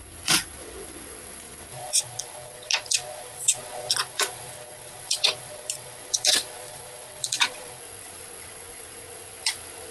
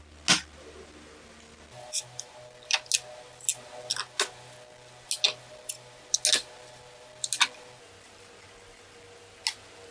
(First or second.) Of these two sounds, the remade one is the first